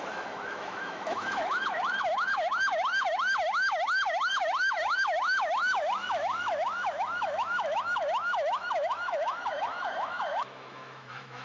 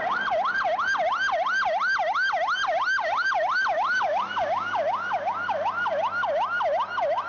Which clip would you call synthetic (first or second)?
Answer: first